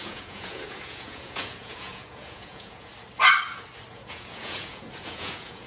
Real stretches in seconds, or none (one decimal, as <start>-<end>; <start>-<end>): 2.9-3.9